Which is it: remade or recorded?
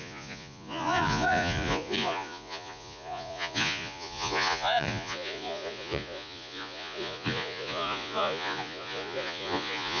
remade